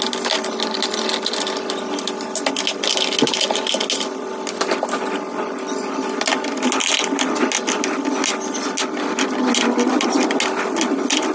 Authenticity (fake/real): real